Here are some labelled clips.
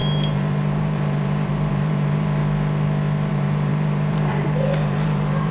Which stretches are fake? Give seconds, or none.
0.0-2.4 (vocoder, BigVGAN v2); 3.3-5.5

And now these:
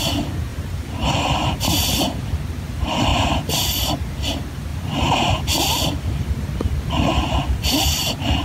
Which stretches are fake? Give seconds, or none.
0.5-1.6 (vocoder, BigVGAN v2); 3.1-3.6; 4.7-5.8

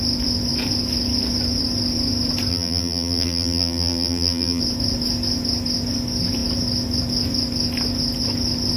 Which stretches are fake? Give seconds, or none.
2.5-4.6 (vocoder, BigVGAN v2)

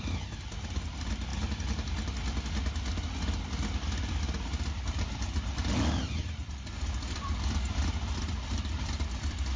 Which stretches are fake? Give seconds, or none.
0.0-1.3 (vocoder, BigVGAN v2); 4.2-9.6

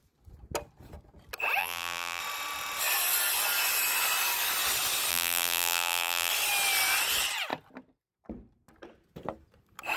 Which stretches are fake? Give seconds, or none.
1.6-2.2 (vocoder, BigVGAN v2); 5.1-6.3

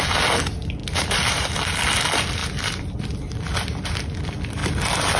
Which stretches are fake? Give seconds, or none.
0.8-2.0 (vocoder, BigVGAN v2); 2.4-3.4

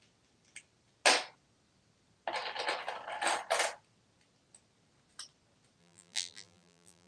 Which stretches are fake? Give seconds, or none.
5.8-7.1 (vocoder, BigVGAN v2)

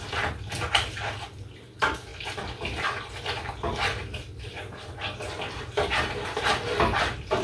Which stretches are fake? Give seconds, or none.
none